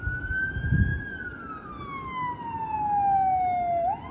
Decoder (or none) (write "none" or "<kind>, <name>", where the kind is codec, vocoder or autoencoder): none